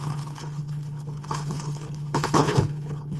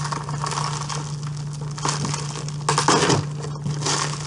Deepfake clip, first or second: first